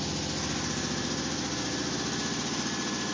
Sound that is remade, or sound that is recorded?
recorded